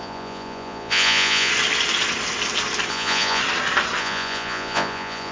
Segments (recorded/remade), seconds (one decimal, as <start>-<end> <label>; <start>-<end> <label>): 0.0-1.5 remade; 1.5-2.9 recorded; 2.9-3.4 remade; 3.4-4.0 recorded; 4.0-5.3 remade